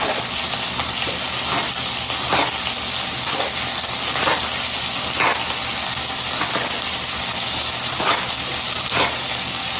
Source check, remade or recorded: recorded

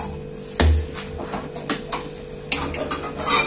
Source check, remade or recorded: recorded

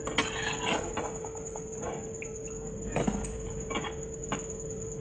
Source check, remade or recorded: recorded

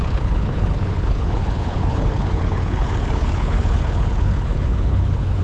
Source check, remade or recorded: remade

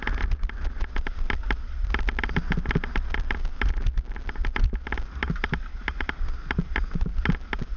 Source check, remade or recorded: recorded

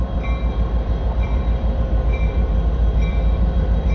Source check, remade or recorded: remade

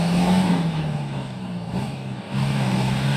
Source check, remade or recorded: remade